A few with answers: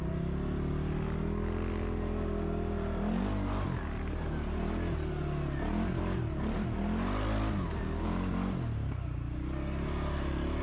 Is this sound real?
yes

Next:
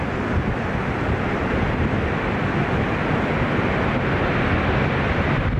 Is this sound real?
yes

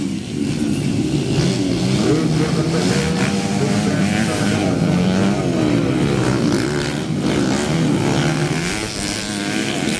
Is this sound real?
yes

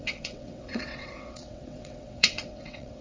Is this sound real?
no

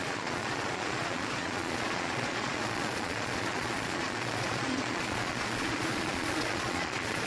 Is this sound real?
no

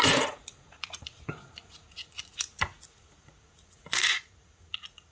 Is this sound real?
no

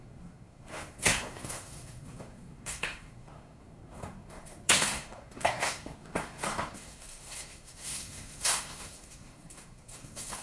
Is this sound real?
no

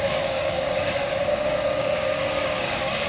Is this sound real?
no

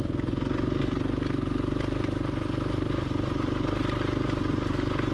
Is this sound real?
yes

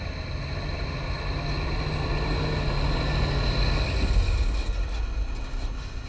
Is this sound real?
yes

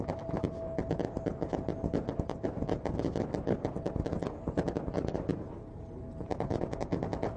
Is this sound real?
yes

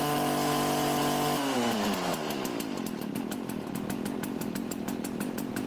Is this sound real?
yes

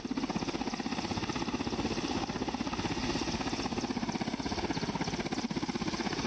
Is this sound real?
yes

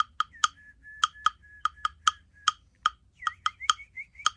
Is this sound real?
yes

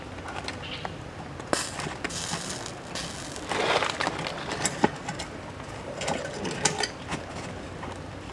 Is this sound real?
yes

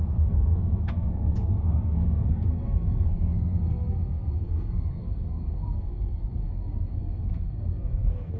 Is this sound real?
no